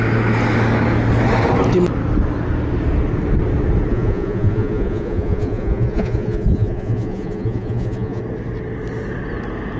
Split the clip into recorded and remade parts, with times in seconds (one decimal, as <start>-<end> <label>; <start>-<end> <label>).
0.0-3.9 recorded; 3.9-8.2 remade; 8.2-9.8 recorded